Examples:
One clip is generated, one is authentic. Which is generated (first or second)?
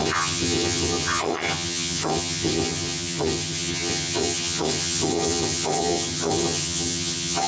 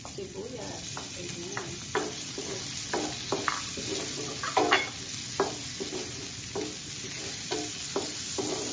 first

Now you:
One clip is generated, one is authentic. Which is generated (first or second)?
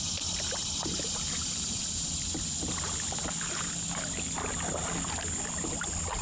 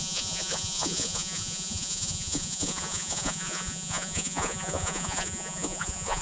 second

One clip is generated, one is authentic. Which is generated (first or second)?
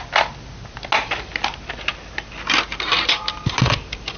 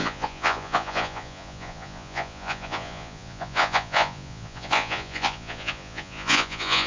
second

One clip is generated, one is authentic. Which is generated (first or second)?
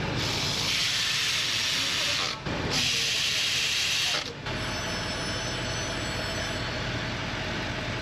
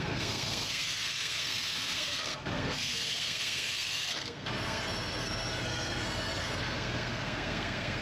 second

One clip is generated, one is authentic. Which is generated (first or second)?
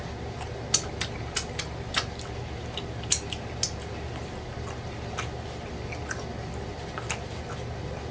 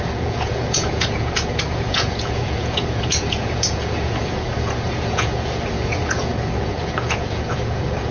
second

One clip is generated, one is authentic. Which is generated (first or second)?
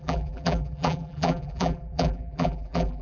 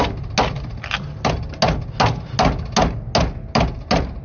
first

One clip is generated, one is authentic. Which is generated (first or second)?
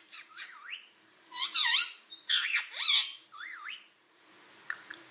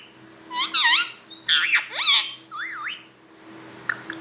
first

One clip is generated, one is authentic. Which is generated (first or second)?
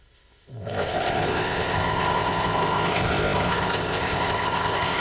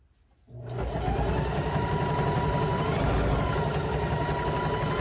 first